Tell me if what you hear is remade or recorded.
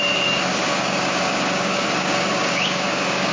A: remade